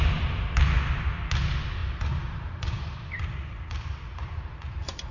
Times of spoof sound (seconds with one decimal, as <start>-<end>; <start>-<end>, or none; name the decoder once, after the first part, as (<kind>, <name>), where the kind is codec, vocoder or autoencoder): 1.8-5.1 (vocoder, BigVGAN v2)